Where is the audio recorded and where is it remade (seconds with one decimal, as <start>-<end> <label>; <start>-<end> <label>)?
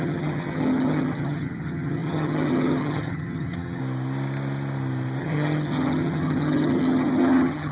0.0-3.8 remade; 3.8-5.2 recorded; 5.2-7.7 remade